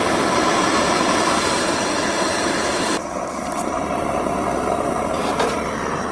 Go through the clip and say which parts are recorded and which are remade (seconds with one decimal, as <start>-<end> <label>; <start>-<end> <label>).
0.0-0.5 recorded; 0.5-4.2 remade; 4.2-6.1 recorded